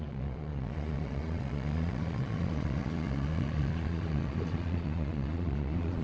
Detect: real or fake fake